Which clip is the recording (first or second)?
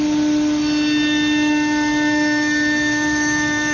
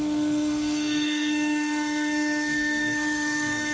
first